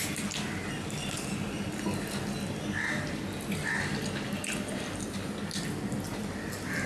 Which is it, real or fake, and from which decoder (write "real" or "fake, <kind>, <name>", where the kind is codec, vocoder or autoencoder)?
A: real